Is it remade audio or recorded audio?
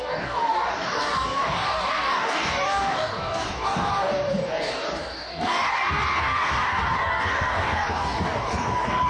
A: remade